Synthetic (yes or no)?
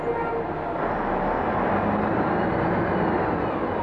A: no